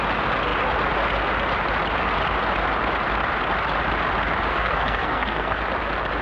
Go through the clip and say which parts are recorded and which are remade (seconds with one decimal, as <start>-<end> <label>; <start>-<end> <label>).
0.0-4.5 recorded; 4.5-5.6 remade; 5.6-6.2 recorded